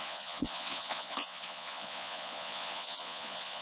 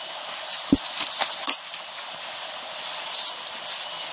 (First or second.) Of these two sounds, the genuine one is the second